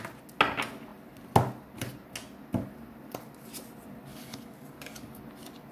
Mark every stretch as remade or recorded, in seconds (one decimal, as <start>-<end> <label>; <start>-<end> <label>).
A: 0.0-4.1 recorded; 4.1-5.2 remade; 5.2-5.7 recorded